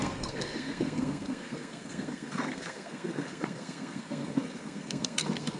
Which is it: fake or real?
fake